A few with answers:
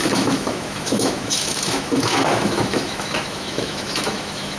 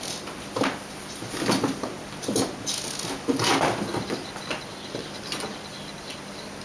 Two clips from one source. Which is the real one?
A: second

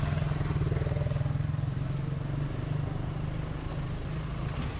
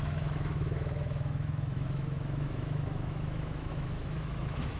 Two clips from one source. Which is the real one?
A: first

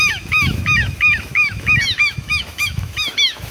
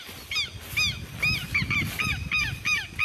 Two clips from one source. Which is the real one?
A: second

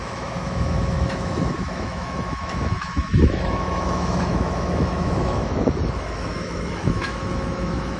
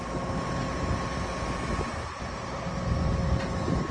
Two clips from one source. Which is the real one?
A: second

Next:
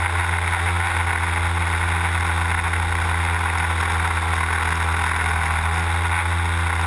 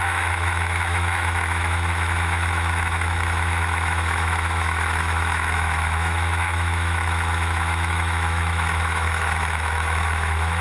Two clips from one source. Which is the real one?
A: first